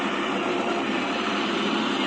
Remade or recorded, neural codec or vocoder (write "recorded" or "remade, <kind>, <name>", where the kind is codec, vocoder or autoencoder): recorded